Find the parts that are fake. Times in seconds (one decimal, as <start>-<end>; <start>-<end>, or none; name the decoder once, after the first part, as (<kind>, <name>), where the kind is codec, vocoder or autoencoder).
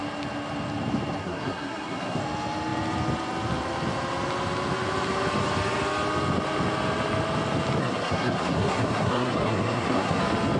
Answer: 1.2-2.2 (codec, SNAC); 7.8-10.2